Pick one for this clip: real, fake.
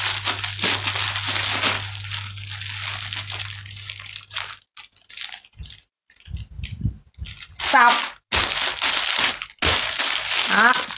real